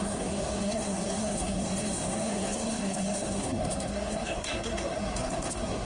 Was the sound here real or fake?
fake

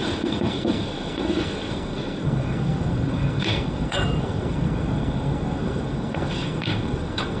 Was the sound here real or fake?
fake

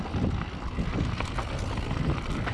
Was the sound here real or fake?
real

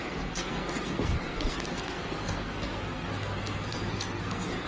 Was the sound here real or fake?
fake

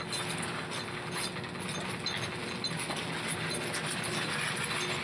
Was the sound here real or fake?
real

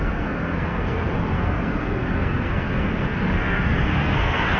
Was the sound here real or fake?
fake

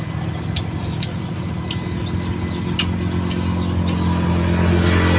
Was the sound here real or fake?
real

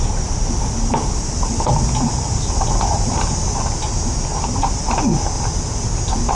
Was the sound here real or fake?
real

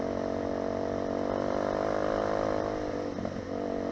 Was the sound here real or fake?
real